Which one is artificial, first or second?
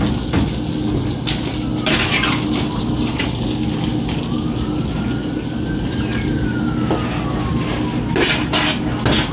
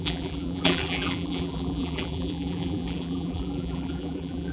second